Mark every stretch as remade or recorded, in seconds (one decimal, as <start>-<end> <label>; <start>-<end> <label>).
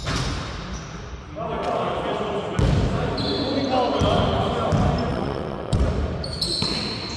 0.0-5.1 recorded; 5.1-5.8 remade; 5.8-7.2 recorded